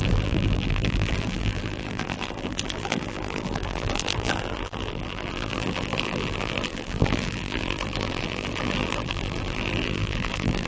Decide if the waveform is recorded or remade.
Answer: remade